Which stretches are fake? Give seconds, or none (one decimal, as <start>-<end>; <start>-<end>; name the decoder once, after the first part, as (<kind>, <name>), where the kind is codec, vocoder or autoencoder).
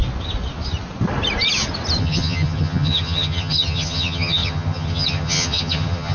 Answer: 2.0-6.1 (vocoder, HiFi-GAN)